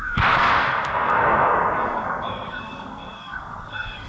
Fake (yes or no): yes